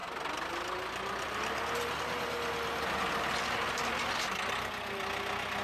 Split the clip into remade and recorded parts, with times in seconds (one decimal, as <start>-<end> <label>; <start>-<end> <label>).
0.0-5.6 recorded